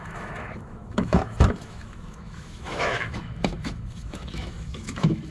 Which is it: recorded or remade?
remade